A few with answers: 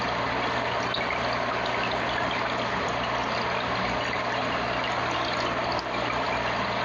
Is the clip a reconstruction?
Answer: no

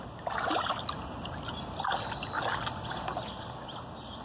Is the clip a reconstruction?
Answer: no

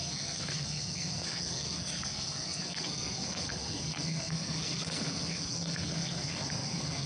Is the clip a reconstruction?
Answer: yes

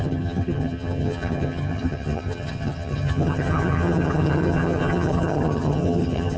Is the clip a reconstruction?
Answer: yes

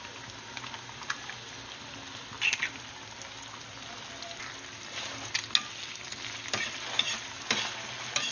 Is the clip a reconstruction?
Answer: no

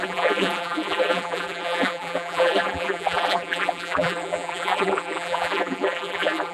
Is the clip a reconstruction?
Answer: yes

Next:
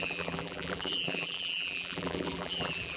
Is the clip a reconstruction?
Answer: yes